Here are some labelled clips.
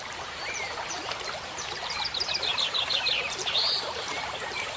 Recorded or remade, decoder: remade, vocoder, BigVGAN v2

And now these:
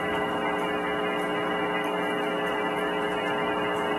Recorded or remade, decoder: recorded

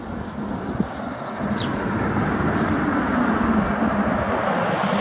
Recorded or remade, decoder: recorded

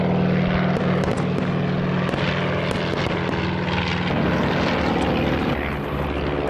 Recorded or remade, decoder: recorded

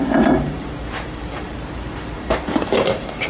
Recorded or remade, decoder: remade, vocoder, BigVGAN v2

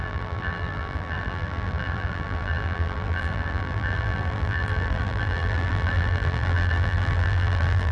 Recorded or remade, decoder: remade, vocoder, BigVGAN v2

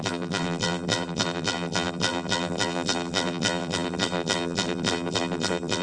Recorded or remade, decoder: remade, vocoder, BigVGAN v2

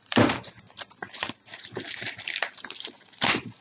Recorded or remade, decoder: remade, vocoder, BigVGAN v2